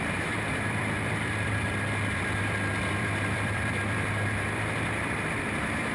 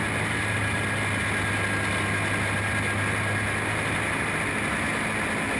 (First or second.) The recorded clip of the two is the second